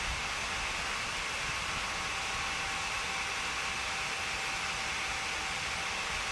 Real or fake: real